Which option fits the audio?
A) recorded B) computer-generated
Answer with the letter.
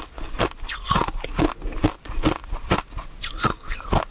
A